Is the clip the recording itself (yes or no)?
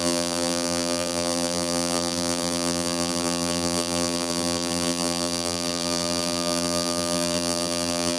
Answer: no